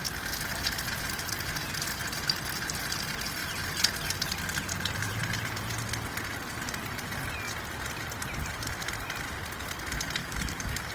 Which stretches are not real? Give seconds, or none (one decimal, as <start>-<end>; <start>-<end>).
10.2-10.9